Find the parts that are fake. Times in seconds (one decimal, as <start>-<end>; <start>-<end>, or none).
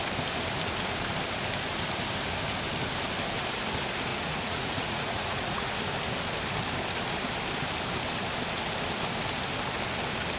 4.1-5.7